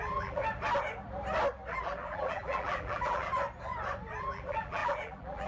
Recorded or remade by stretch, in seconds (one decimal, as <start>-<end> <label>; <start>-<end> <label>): 0.0-0.4 remade; 0.4-1.7 recorded; 1.7-3.3 remade; 3.3-4.2 recorded; 4.2-5.5 remade